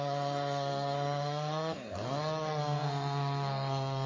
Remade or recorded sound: remade